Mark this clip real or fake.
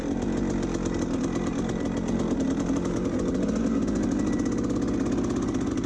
real